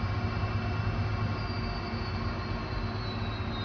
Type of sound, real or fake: real